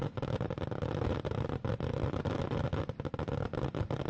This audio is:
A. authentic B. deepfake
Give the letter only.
A